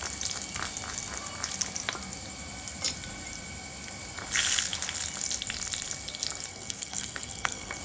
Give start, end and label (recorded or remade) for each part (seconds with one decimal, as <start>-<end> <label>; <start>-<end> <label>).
0.0-6.5 recorded; 6.5-7.8 remade